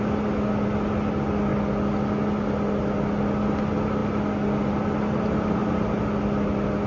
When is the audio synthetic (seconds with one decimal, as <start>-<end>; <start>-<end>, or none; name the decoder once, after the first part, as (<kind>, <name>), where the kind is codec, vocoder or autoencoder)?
none